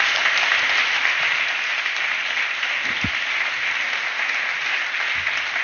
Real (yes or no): yes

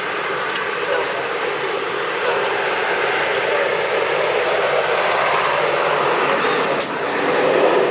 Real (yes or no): yes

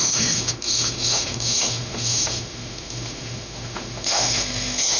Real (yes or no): no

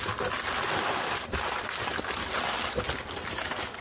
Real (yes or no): yes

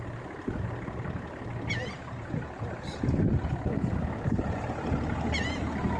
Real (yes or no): yes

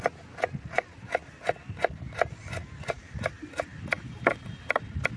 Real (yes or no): yes